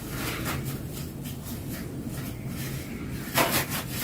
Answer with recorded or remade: recorded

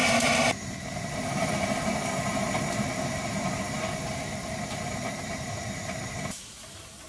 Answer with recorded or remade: remade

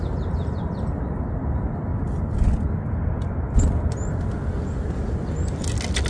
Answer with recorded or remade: recorded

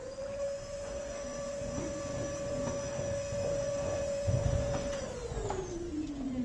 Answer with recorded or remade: remade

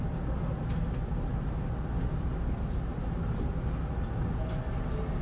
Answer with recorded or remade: recorded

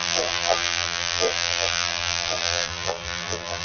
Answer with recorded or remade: remade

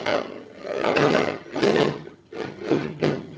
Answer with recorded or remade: remade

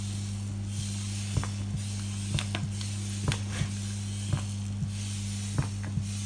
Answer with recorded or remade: recorded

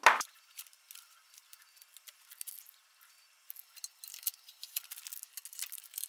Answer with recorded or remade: recorded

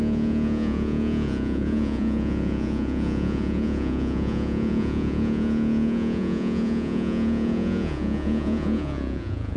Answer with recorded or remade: remade